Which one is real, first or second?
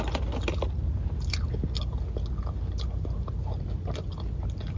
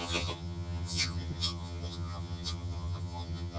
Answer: first